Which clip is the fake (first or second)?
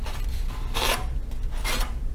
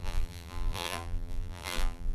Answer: second